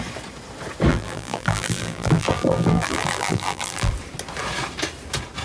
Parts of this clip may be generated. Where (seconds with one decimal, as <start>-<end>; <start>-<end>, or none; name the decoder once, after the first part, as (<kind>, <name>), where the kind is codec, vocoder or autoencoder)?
0.9-3.9 (vocoder, BigVGAN v2)